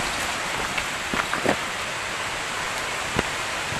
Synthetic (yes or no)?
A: no